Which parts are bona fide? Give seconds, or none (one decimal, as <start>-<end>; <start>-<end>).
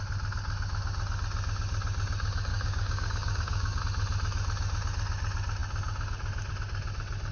0.0-2.5; 3.8-7.3